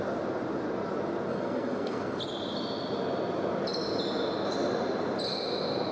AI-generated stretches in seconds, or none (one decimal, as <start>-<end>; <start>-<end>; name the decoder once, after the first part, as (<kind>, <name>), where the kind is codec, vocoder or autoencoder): 1.3-2.2 (codec, SNAC)